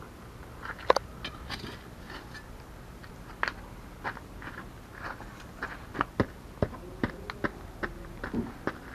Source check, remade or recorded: recorded